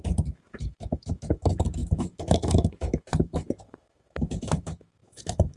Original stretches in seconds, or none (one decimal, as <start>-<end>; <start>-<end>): none